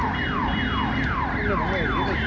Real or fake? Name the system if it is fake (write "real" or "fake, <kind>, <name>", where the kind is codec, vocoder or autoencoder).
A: real